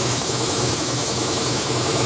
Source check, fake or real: fake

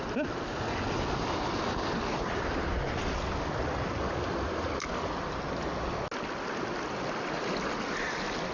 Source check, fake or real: real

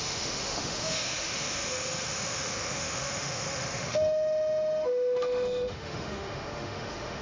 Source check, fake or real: fake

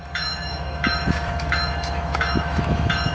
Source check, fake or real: fake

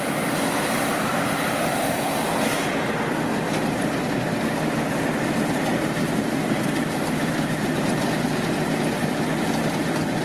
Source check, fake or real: real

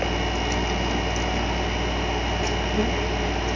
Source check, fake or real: real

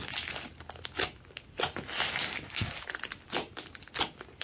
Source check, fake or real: real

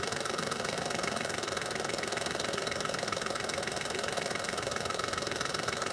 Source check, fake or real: fake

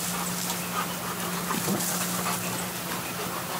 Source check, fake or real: real